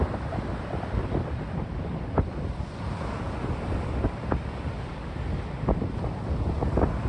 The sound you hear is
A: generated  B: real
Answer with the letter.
B